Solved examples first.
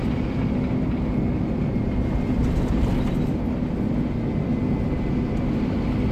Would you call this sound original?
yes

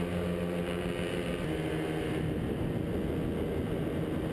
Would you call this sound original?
yes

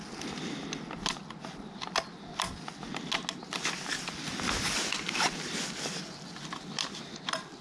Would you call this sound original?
yes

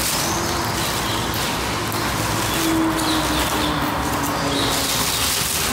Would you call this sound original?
yes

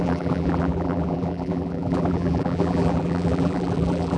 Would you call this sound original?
no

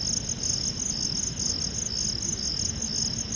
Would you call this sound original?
yes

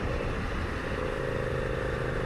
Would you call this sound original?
yes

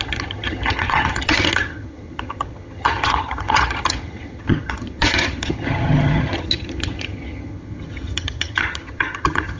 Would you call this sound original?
no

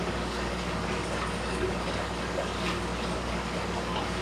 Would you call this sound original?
no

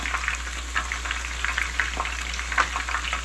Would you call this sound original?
yes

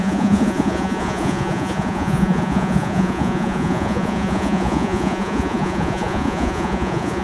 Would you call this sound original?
no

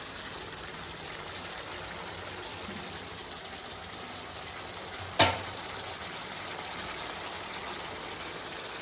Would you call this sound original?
yes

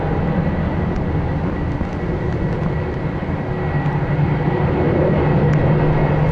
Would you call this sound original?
yes